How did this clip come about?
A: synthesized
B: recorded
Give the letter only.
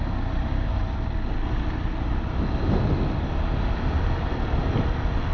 B